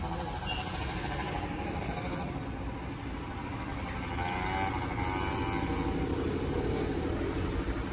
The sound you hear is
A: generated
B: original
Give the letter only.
B